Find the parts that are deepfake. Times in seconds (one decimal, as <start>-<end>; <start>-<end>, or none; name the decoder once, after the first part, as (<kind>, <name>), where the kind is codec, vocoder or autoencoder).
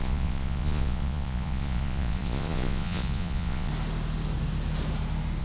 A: 0.0-3.7 (vocoder, Vocos)